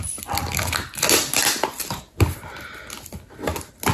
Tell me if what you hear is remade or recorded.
recorded